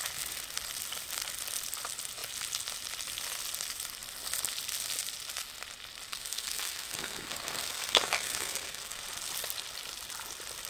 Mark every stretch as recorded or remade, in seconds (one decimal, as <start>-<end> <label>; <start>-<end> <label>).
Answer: 0.0-6.1 recorded; 6.1-9.0 remade; 9.0-10.7 recorded